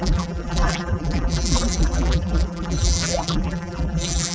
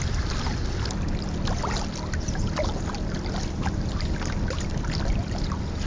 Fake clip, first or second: first